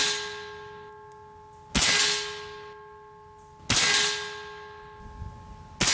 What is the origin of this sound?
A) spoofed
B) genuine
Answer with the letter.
B